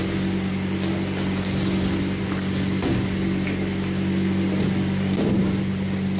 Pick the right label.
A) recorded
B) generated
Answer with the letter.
A